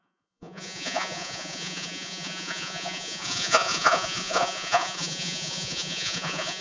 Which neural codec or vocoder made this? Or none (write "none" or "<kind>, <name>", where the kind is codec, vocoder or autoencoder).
vocoder, Vocos